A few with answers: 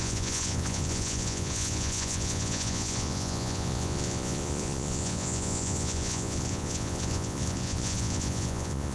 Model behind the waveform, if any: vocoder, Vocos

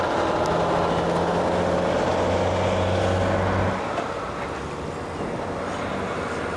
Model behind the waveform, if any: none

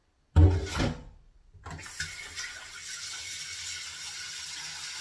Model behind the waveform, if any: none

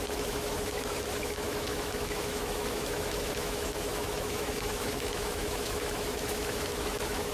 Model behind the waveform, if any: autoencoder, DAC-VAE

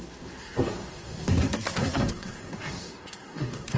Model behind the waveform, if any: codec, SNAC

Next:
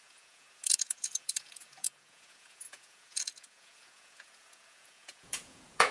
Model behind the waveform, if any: vocoder, Vocos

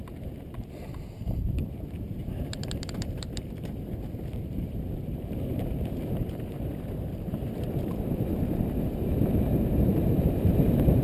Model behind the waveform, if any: vocoder, BigVGAN v2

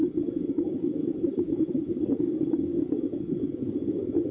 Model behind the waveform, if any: codec, DAC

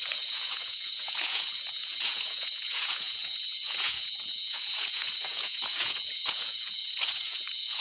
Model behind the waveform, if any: vocoder, Vocos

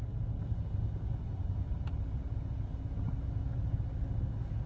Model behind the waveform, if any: none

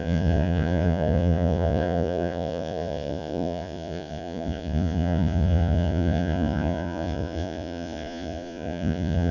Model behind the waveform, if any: vocoder, Vocos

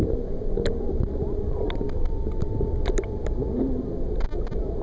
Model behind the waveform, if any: none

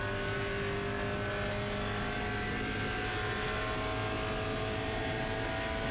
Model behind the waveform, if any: none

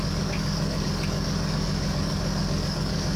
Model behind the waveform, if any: codec, DAC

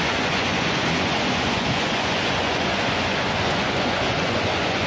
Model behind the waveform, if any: vocoder, Vocos